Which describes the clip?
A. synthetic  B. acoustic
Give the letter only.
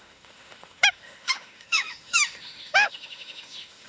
A